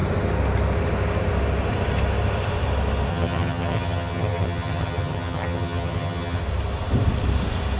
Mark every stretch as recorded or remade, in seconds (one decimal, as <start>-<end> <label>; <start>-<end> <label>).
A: 0.0-3.1 recorded; 3.1-6.4 remade; 6.4-7.8 recorded